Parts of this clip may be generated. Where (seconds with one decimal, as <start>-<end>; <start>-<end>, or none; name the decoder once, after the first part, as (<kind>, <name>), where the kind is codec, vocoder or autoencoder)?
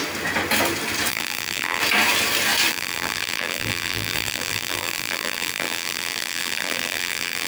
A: 1.1-1.8 (vocoder, BigVGAN v2); 2.7-7.5